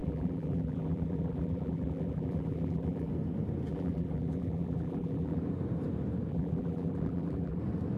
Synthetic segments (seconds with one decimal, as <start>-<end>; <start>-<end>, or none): 0.0-3.1; 3.7-5.4; 6.3-7.6